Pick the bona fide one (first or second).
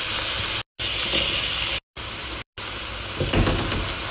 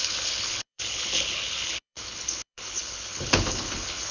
first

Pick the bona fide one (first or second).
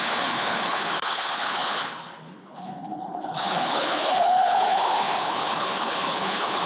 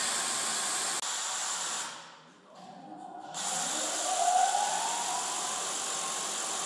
second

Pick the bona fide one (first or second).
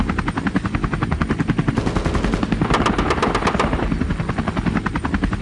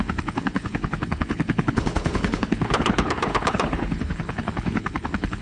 first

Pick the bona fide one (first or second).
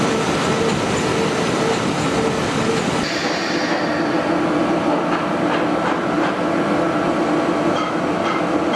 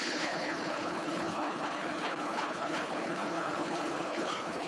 first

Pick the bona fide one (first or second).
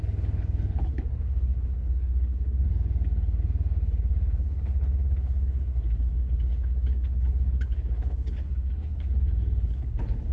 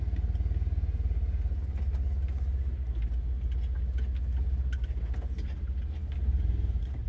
second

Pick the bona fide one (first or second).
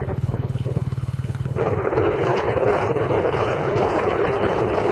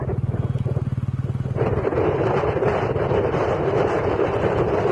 second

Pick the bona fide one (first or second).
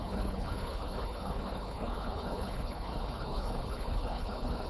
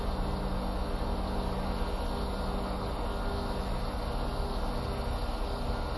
second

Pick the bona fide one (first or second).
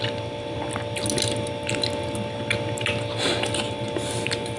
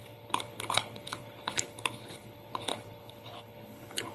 first